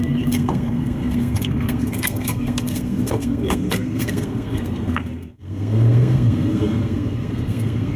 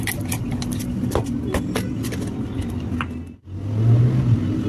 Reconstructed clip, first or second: first